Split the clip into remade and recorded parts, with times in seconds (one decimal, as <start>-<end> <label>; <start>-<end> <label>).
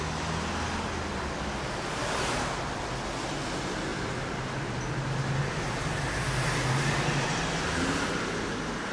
0.0-8.9 recorded